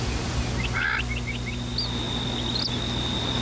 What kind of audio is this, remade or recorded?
remade